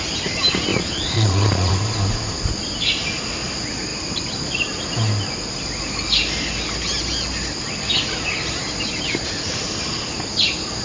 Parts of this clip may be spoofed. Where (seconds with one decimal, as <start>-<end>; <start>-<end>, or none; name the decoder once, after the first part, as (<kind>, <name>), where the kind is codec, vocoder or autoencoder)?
0.7-1.7 (vocoder, Vocos)